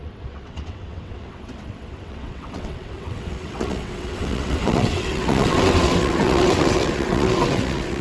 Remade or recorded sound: remade